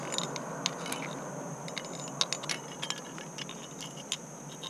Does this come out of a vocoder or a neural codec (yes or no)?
no